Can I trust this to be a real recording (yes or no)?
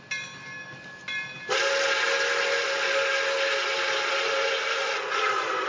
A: yes